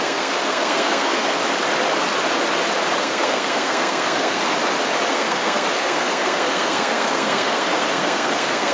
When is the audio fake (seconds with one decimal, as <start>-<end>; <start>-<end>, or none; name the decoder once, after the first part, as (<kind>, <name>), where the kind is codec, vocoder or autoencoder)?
0.0-1.4 (codec, SNAC); 3.0-4.4; 5.1-8.7